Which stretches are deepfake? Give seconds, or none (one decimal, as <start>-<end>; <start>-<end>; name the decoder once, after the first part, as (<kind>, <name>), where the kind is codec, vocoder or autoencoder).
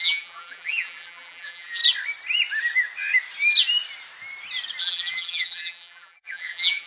0.0-1.8 (vocoder, BigVGAN v2); 4.8-6.9